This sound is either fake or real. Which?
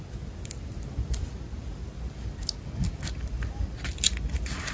real